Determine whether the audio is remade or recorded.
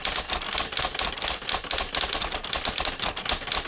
recorded